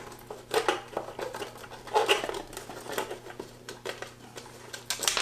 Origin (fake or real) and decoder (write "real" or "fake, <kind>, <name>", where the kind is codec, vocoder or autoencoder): real